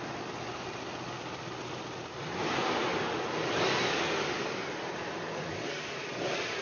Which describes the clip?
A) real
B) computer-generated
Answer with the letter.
A